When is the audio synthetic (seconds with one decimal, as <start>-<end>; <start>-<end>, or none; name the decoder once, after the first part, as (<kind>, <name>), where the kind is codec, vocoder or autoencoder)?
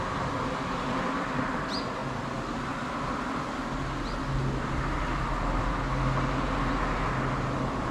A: none